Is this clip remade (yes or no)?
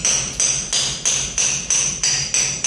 no